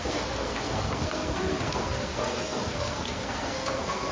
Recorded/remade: remade